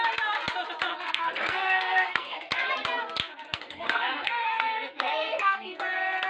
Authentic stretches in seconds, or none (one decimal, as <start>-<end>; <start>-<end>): 0.0-0.9; 2.7-3.3; 5.8-6.3

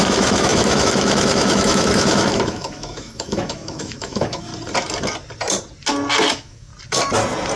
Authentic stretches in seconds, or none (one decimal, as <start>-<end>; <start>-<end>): 4.5-6.3; 6.7-7.6

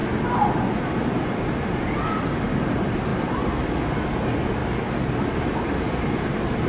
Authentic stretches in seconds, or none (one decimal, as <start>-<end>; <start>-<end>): 0.0-0.7; 4.6-5.6

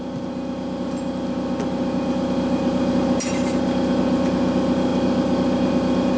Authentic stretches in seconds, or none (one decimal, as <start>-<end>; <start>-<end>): 0.0-6.2

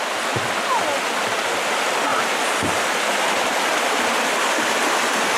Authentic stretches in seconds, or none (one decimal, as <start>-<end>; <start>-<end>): 0.0-5.4

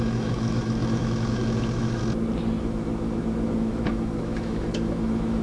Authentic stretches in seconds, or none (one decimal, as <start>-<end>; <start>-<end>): 2.0-2.6

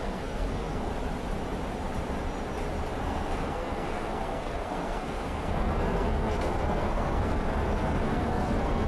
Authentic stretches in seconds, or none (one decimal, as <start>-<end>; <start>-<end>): 0.9-3.0

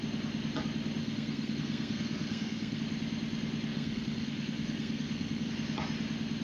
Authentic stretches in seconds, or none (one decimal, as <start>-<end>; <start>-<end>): 0.0-1.0; 2.8-3.7; 5.5-6.4